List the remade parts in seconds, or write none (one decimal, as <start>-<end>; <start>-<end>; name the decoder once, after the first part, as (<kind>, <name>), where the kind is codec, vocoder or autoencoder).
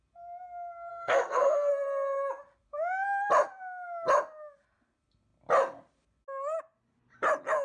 0.9-1.7 (codec, SNAC)